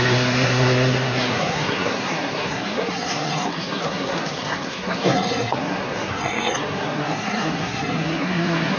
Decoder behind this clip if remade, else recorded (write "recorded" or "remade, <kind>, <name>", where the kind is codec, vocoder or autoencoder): remade, codec, SNAC